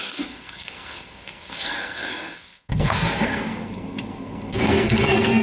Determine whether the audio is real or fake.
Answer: fake